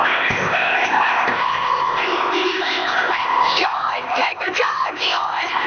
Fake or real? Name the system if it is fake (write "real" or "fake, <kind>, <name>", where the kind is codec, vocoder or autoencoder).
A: fake, codec, ZipCodec